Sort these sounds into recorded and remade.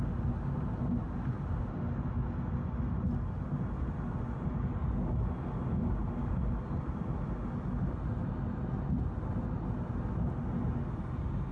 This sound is recorded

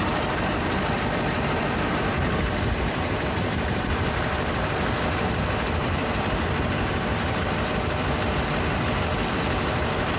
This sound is remade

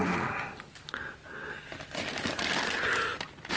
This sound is recorded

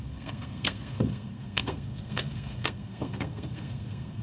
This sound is remade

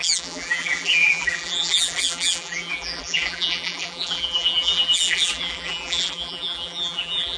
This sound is remade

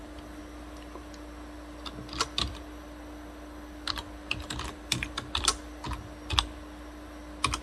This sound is recorded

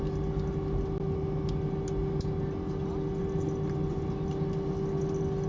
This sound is recorded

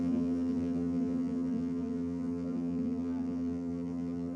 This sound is remade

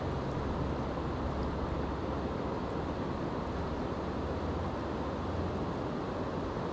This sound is recorded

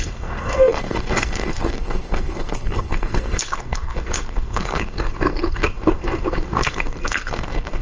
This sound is remade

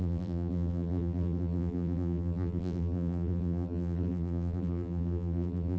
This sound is remade